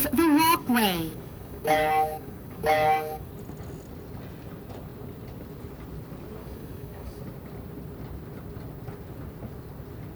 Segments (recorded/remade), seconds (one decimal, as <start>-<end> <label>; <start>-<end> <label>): 0.0-3.3 remade; 3.3-6.4 recorded; 6.4-7.2 remade; 7.2-10.2 recorded